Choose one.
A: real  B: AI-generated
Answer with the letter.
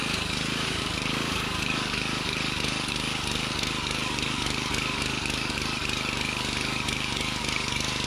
B